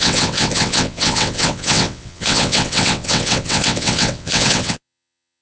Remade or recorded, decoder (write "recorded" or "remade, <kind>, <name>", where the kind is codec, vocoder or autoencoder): remade, vocoder, WaveNeXt